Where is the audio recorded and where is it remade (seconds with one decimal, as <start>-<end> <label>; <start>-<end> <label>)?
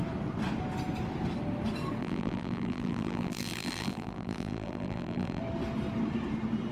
0.0-2.0 recorded; 2.0-5.4 remade; 5.4-6.7 recorded